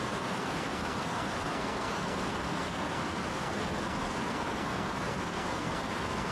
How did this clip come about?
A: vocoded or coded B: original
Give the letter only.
A